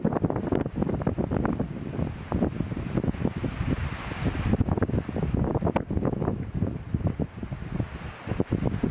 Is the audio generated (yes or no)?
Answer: no